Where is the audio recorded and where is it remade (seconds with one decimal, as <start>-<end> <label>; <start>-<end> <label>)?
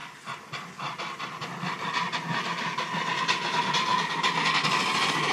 0.0-3.2 remade; 3.2-5.3 recorded